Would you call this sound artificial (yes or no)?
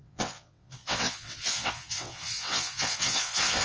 yes